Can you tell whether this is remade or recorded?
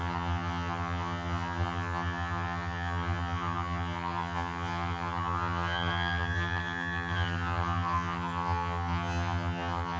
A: remade